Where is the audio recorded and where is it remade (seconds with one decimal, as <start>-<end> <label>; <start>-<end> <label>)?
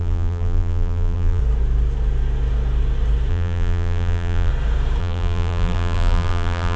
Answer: 0.0-1.4 remade; 1.4-3.3 recorded; 3.3-4.5 remade; 4.5-5.0 recorded; 5.0-6.8 remade